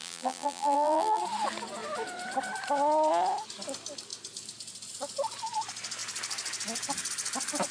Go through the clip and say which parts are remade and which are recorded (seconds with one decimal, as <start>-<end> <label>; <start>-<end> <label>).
0.0-1.2 remade; 1.2-7.7 recorded